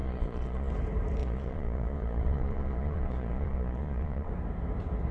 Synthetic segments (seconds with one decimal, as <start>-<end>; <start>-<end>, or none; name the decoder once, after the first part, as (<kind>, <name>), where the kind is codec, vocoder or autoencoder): 0.0-0.7 (vocoder, Vocos); 1.2-4.3